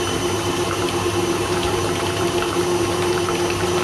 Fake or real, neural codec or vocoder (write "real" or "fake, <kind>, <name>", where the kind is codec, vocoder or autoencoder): fake, vocoder, BigVGAN v2